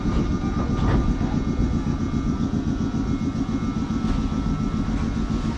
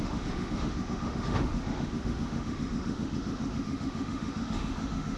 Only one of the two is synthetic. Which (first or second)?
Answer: second